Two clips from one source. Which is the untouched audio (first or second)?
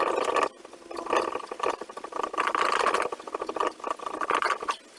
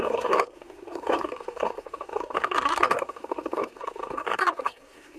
first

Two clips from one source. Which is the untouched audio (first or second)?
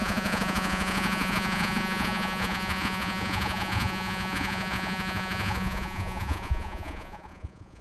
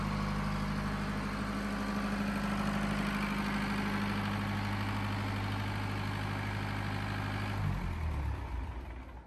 second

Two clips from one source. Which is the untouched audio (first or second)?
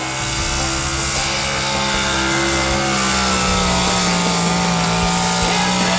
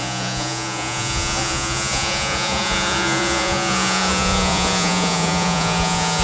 first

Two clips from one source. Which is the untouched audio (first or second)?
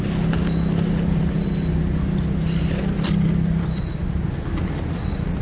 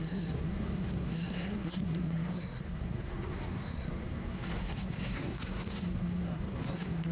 first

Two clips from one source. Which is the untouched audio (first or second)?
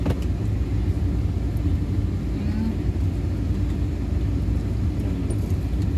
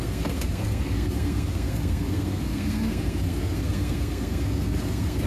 first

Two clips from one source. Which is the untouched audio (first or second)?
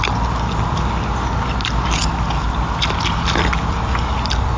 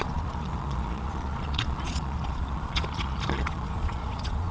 first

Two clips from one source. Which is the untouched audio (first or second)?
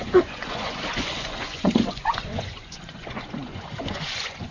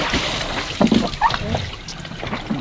second